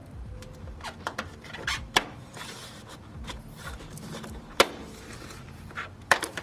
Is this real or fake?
fake